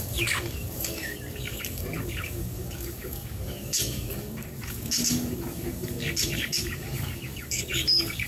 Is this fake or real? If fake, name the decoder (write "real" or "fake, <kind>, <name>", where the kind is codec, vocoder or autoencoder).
fake, codec, DAC